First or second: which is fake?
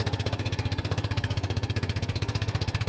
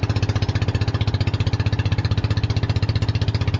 first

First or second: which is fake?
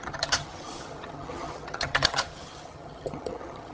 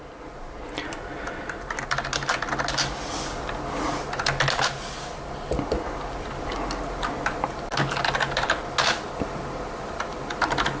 first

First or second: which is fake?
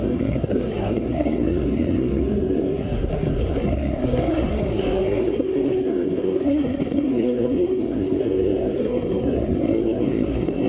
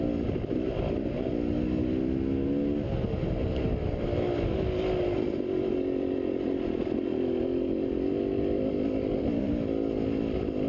first